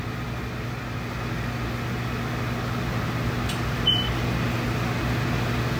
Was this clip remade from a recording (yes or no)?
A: no